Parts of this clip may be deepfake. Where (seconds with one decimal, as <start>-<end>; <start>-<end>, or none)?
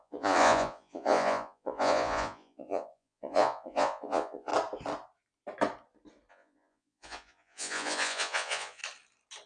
0.0-4.5; 6.3-8.8